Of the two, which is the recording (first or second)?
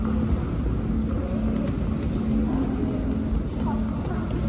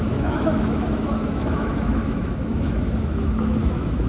first